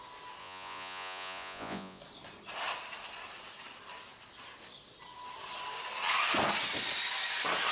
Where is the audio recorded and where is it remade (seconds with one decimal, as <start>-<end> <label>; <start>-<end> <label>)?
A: 0.0-0.4 recorded; 0.4-2.0 remade; 2.0-7.7 recorded